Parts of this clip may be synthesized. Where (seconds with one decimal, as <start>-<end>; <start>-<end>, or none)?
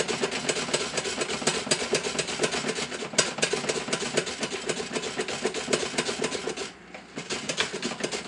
none